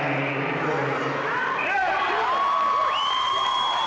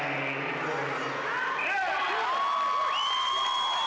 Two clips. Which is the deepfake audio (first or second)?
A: first